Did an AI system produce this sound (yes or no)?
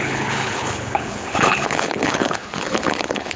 yes